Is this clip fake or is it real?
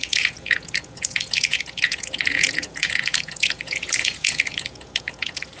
fake